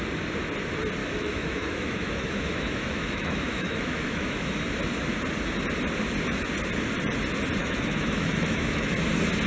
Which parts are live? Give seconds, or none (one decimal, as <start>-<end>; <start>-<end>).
0.0-1.0; 4.5-7.6; 8.9-9.5